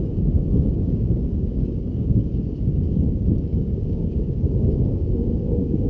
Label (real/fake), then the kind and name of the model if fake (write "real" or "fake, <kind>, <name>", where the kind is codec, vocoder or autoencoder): fake, codec, DAC